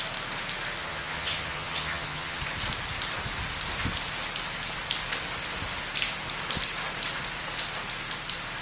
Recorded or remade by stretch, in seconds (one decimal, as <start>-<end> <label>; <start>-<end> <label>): 0.0-0.8 recorded; 0.8-2.4 remade; 2.4-8.6 recorded